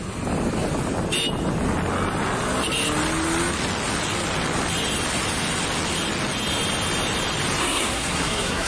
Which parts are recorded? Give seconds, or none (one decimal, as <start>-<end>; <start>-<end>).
0.0-7.6